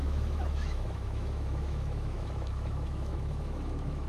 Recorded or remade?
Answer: remade